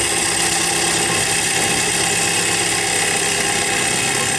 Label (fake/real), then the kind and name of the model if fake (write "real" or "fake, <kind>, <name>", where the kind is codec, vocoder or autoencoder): real